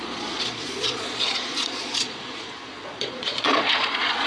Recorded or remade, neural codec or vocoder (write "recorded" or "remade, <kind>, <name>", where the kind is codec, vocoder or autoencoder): remade, vocoder, Vocos